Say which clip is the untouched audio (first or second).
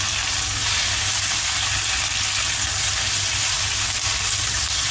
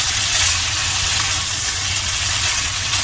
first